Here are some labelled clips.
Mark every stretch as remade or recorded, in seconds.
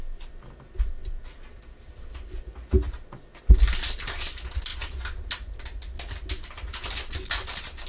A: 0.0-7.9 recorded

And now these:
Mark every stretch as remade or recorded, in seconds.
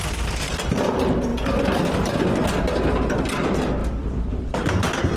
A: 0.0-3.8 recorded; 3.8-4.7 remade; 4.7-5.2 recorded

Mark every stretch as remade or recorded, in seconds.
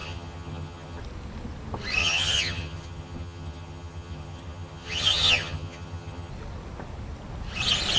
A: 0.0-1.0 remade; 1.0-2.0 recorded; 2.0-6.3 remade; 6.3-8.0 recorded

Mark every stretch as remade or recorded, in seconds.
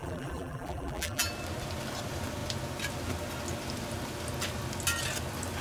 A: 0.0-1.3 remade; 1.3-5.6 recorded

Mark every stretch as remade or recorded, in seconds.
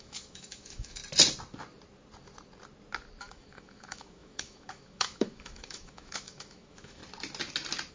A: 0.0-1.0 remade; 1.0-3.2 recorded; 3.2-7.0 remade; 7.0-7.9 recorded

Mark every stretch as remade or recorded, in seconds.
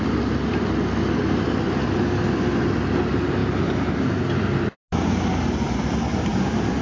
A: 0.0-6.3 recorded; 6.3-6.8 remade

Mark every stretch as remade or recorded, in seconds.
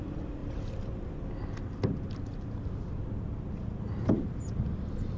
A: 0.0-5.2 remade